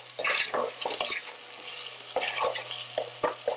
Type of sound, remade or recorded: recorded